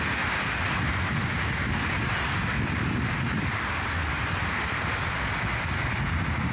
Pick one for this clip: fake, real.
real